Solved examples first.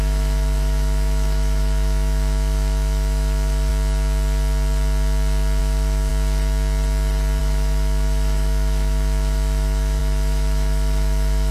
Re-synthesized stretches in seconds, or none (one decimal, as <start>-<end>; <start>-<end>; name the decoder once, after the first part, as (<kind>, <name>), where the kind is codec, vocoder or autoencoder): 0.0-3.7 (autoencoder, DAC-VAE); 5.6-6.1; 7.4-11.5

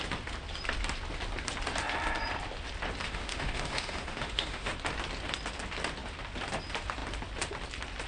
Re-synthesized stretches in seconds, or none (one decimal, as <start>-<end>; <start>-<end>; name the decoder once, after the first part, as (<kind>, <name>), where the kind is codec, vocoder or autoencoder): 3.0-4.7 (autoencoder, DAC-VAE)

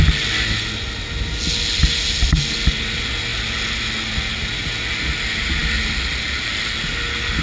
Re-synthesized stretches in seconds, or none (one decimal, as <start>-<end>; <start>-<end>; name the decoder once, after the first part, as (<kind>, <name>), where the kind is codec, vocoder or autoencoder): none